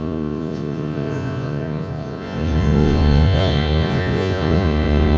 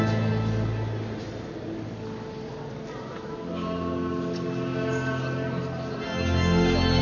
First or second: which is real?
second